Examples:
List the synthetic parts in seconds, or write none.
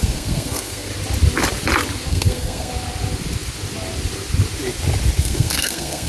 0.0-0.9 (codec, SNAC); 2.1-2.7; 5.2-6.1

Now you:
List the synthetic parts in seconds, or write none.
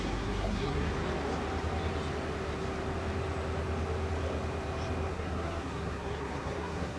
0.0-0.9 (codec, SNAC); 5.1-7.0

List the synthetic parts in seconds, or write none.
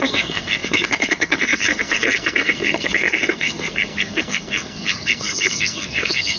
0.0-6.4 (codec, SNAC)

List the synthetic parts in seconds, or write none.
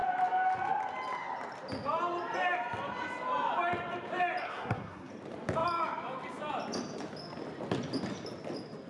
4.4-5.1 (codec, SNAC)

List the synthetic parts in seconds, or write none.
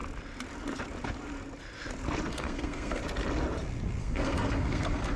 2.3-3.0 (codec, SNAC); 4.0-5.2